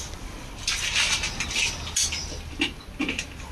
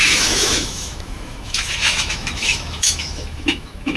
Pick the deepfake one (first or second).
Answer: second